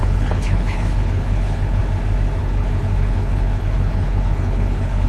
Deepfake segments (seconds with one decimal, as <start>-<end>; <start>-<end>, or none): 0.0-1.8; 2.4-5.1

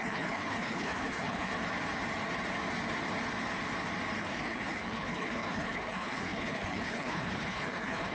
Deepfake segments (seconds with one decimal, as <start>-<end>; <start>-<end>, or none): 0.0-1.5; 4.2-8.1